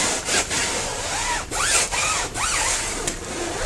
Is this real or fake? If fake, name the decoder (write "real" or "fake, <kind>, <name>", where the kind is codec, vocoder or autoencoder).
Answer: real